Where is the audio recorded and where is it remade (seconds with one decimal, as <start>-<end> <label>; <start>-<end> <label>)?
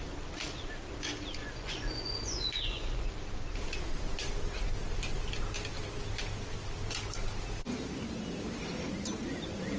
0.0-1.4 recorded; 1.4-3.1 remade; 3.1-9.8 recorded